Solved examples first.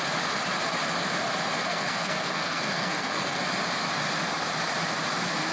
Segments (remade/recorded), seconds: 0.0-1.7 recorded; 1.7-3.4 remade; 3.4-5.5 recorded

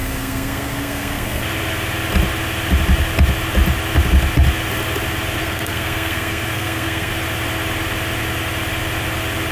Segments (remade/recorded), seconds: 0.0-1.4 remade; 1.4-5.4 recorded; 5.4-7.1 remade; 7.1-9.5 recorded

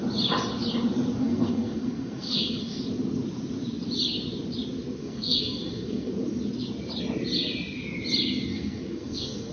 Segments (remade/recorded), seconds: 0.0-1.2 recorded; 1.2-2.8 remade; 2.8-5.0 recorded; 5.0-6.1 remade; 6.1-8.5 recorded; 8.5-9.5 remade

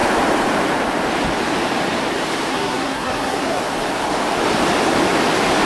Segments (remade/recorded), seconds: 0.0-2.5 recorded; 2.5-3.6 remade; 3.6-5.7 recorded